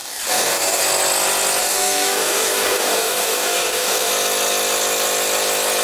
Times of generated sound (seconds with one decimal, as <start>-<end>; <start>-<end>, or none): 0.0-0.8; 1.6-4.1